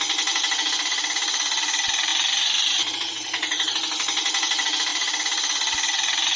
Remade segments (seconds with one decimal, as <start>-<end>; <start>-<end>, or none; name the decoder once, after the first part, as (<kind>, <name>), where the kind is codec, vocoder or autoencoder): none